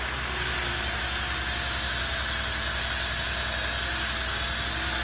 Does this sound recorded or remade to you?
recorded